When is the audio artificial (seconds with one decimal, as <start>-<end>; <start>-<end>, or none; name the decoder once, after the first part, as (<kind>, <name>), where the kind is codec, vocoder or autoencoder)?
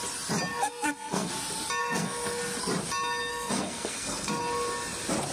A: 0.5-1.3 (codec, SNAC); 1.8-2.4; 3.3-4.4